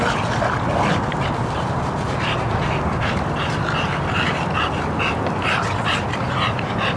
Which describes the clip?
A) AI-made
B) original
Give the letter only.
B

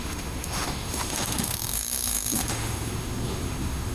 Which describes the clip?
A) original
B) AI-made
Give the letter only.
B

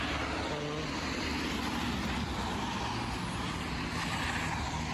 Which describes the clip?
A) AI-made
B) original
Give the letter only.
B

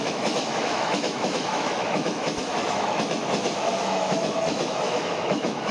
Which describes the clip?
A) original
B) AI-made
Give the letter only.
B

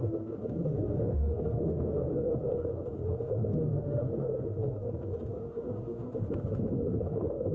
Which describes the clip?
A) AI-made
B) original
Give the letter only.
A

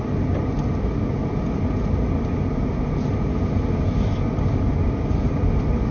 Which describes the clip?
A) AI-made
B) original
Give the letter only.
B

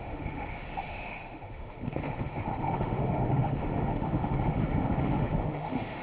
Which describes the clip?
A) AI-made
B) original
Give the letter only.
A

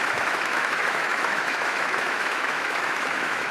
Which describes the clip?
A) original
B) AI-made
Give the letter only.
B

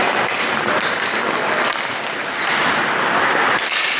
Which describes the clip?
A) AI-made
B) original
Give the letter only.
B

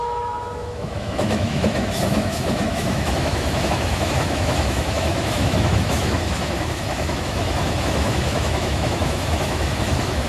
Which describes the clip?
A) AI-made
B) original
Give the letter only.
A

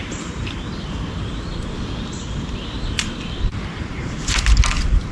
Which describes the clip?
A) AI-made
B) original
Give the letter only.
B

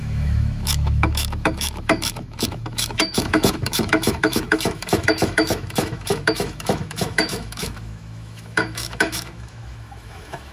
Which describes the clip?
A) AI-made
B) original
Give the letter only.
A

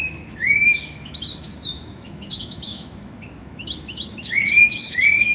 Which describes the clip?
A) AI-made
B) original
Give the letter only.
A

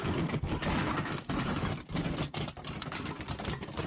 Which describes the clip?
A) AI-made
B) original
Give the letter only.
B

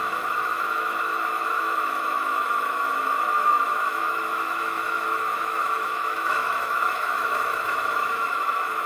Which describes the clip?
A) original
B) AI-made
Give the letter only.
B